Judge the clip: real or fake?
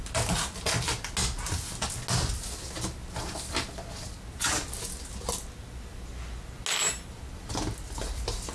real